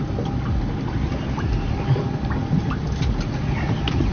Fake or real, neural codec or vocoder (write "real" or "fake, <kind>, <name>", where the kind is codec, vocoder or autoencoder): real